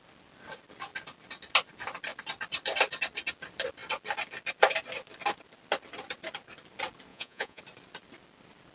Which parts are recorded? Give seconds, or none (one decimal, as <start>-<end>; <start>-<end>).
0.0-7.1; 7.6-8.7